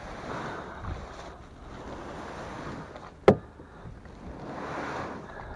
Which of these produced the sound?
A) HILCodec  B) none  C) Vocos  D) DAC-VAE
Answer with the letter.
B